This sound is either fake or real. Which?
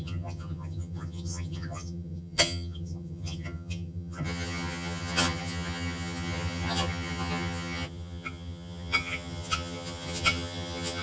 fake